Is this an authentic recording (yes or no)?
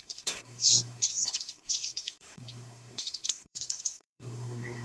no